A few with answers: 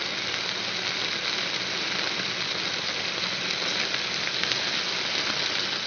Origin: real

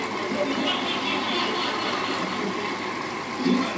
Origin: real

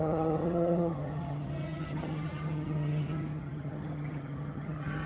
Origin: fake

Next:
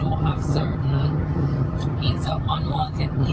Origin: fake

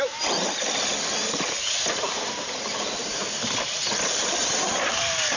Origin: real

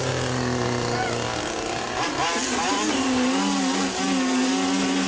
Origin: real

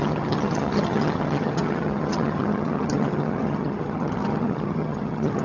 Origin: fake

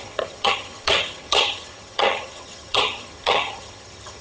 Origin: fake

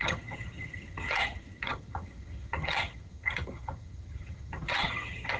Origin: fake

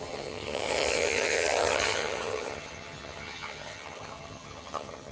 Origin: fake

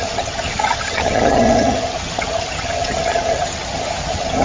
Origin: fake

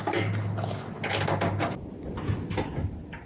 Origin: real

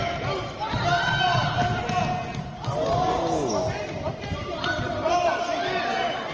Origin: real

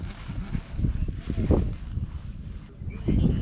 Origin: real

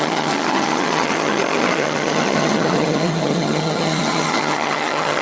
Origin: fake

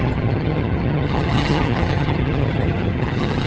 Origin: fake